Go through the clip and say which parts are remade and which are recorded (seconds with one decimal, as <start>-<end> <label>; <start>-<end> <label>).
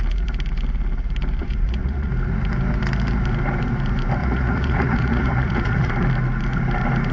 0.0-1.4 recorded; 1.4-2.1 remade; 2.1-4.2 recorded; 4.2-5.9 remade; 5.9-7.1 recorded